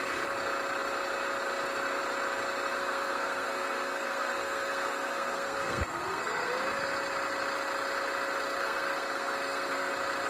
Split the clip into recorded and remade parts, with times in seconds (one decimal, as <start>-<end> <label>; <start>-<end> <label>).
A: 0.0-2.7 recorded; 2.7-6.5 remade; 6.5-8.6 recorded; 8.6-9.9 remade; 9.9-10.3 recorded